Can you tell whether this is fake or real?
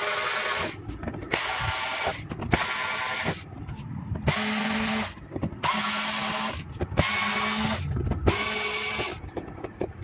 real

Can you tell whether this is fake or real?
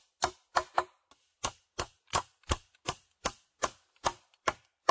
real